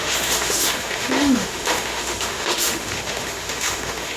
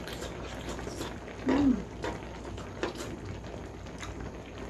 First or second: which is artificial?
first